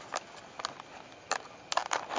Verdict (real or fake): real